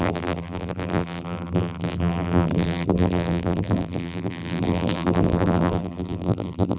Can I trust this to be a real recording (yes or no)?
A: no